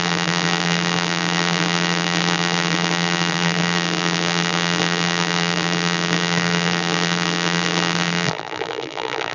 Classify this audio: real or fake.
fake